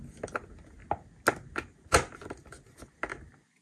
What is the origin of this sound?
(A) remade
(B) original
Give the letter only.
B